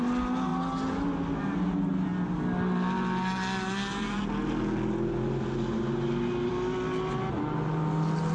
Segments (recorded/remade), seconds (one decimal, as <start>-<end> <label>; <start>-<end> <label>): 0.0-8.3 recorded